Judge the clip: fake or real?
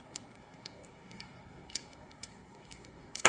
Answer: fake